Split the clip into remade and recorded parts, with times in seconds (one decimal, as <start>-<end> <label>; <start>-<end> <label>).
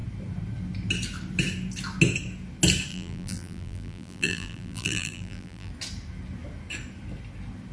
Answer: 0.0-2.9 recorded; 2.9-5.7 remade; 5.7-7.7 recorded